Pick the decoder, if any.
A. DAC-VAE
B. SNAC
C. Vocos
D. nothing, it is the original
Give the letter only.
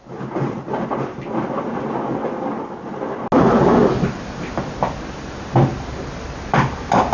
D